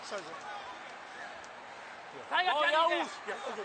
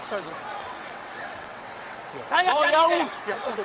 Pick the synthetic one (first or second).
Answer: second